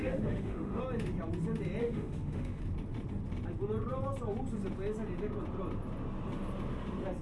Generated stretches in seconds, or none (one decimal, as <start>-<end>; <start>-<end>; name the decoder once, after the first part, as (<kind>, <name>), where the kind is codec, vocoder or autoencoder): 0.0-0.8 (autoencoder, DAC-VAE); 1.8-2.6